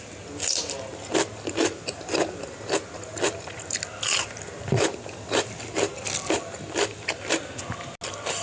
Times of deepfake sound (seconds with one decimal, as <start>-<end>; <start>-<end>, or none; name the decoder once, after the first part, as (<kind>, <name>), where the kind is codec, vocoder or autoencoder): none